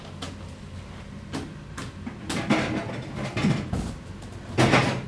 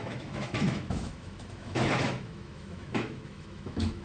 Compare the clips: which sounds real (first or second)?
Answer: first